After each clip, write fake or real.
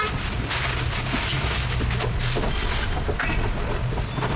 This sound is real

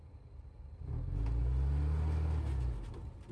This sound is real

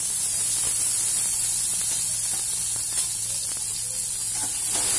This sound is real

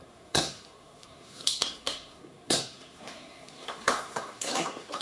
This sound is fake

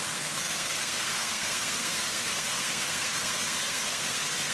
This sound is fake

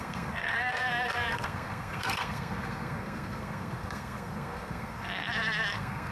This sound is fake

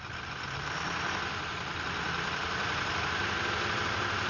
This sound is real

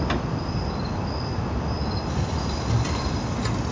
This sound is real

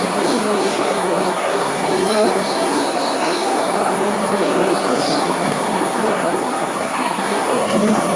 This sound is fake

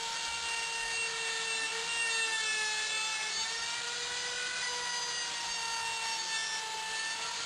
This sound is real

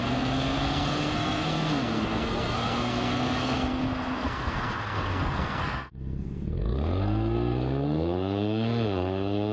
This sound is fake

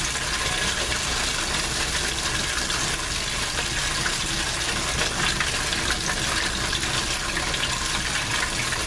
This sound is real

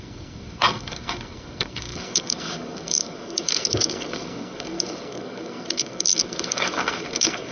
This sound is fake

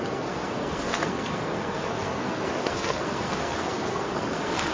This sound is fake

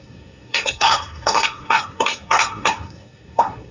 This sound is fake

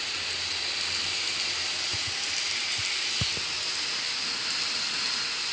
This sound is real